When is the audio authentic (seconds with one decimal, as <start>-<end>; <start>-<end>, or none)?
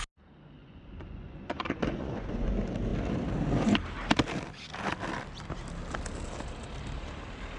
0.0-0.6; 2.5-7.6